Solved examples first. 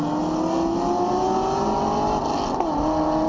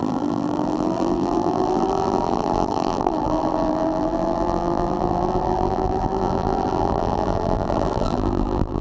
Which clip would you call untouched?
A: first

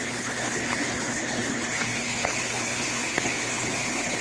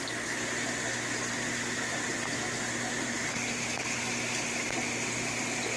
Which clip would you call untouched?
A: second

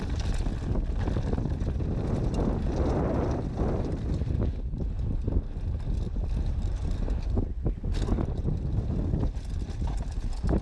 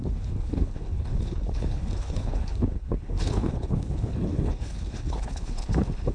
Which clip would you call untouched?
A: first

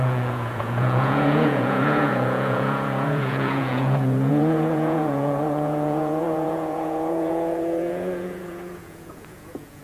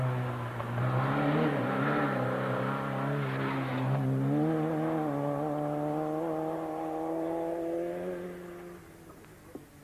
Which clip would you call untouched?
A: second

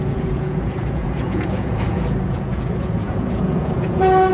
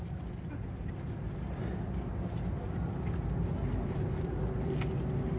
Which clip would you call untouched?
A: second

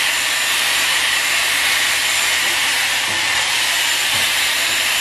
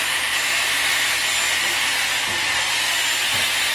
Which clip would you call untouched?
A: second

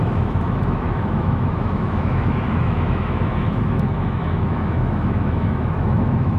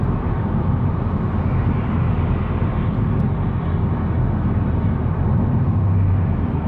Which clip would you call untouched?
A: second